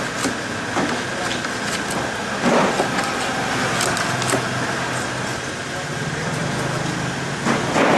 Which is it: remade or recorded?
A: recorded